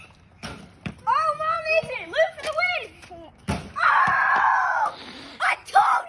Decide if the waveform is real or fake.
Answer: fake